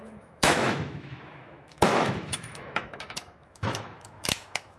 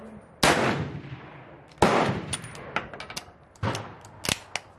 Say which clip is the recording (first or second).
second